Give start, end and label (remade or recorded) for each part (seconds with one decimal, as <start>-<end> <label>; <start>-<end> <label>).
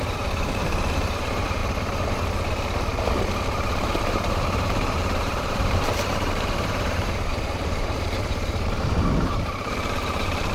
0.0-1.6 remade; 1.6-4.0 recorded; 4.0-10.5 remade